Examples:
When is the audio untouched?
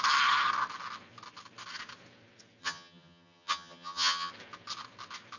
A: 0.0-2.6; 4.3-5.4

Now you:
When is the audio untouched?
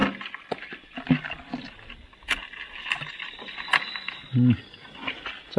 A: 0.0-5.6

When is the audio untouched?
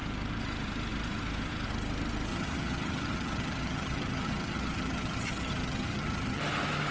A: 0.0-2.3; 6.4-6.9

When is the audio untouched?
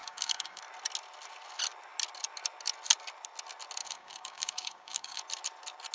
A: 0.6-3.8; 5.2-5.9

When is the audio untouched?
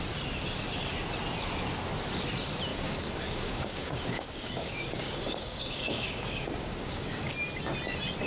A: 0.0-2.7; 7.3-8.3